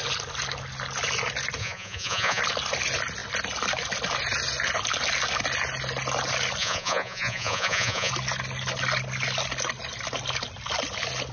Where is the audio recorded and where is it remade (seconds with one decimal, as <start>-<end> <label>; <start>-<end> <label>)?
0.0-1.6 recorded; 1.6-2.4 remade; 2.4-6.6 recorded; 6.6-8.1 remade; 8.1-11.3 recorded